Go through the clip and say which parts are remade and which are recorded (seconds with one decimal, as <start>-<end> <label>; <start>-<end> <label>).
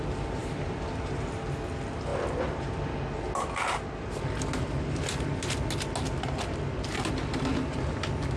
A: 0.0-0.4 recorded; 0.4-1.4 remade; 1.4-8.4 recorded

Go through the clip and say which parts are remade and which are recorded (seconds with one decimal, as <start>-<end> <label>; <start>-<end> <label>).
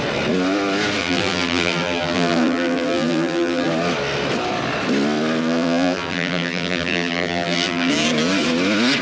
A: 0.0-1.0 recorded; 1.0-3.7 remade; 3.7-5.4 recorded; 5.4-7.9 remade; 7.9-9.0 recorded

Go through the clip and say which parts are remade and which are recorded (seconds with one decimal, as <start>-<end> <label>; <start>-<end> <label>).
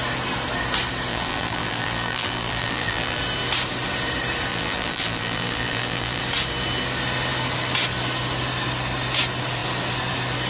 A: 0.0-1.1 recorded; 1.1-3.2 remade; 3.2-4.5 recorded; 4.5-6.2 remade; 6.2-10.5 recorded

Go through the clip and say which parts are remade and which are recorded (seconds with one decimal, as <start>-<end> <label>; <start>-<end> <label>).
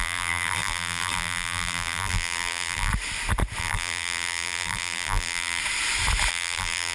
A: 0.0-2.9 remade; 2.9-3.6 recorded; 3.6-5.6 remade; 5.6-6.3 recorded; 6.3-6.9 remade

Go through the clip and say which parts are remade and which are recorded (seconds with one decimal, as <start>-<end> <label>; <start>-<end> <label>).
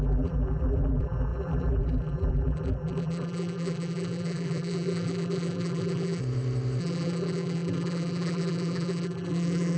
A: 0.0-6.2 remade; 6.2-6.8 recorded; 6.8-9.8 remade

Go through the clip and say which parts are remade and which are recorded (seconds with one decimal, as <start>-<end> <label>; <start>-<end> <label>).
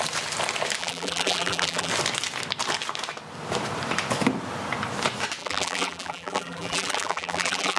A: 0.0-0.8 recorded; 0.8-1.9 remade; 1.9-5.4 recorded; 5.4-7.8 remade